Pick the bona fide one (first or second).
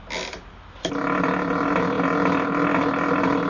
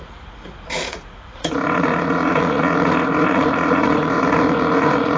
first